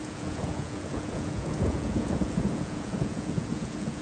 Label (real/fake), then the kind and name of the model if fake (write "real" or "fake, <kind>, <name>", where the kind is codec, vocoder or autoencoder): fake, vocoder, Vocos